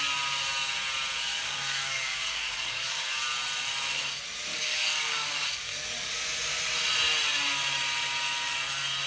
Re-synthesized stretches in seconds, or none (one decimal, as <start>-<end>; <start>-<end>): 1.3-3.2; 4.5-6.1